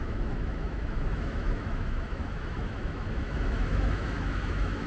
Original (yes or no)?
no